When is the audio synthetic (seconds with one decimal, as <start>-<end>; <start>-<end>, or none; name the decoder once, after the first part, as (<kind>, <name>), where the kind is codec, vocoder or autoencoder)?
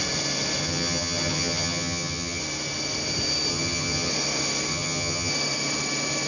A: 0.6-2.4 (vocoder, HiFi-GAN); 3.5-4.1; 4.7-5.3